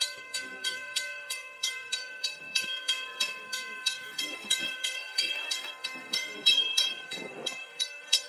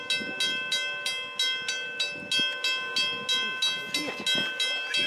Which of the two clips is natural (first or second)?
second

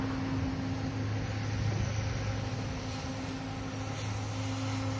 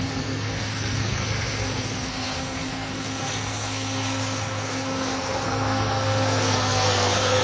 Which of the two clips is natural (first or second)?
first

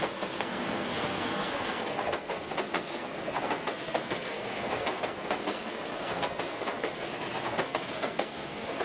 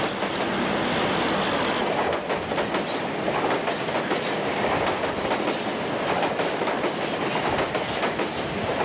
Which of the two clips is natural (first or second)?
second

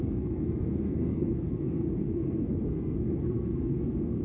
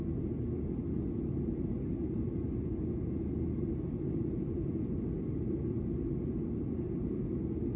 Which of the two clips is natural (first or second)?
second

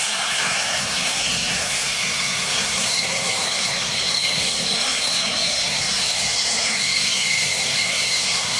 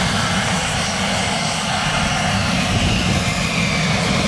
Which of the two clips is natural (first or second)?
second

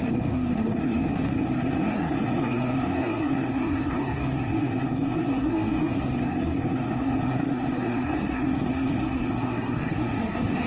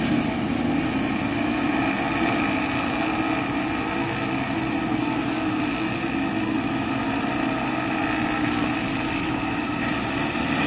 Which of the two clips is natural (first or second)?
second